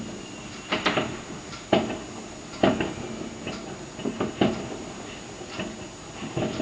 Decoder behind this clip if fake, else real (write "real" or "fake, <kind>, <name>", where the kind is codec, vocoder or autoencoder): real